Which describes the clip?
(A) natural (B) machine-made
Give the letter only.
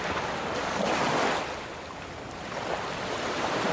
A